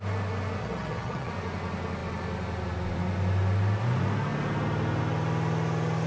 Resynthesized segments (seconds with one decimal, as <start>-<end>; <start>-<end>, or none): 0.6-1.3